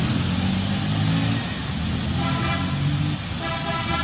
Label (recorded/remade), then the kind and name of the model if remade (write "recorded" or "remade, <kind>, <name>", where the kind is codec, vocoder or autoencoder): recorded